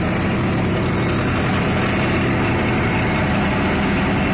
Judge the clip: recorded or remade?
recorded